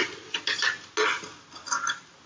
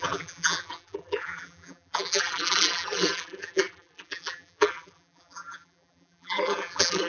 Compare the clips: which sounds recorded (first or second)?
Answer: first